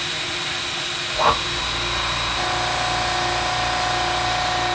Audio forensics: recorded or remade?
recorded